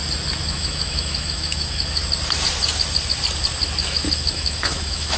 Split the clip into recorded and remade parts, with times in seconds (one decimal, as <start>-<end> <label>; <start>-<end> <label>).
0.0-0.5 recorded; 0.5-2.0 remade; 2.0-3.8 recorded; 3.8-5.2 remade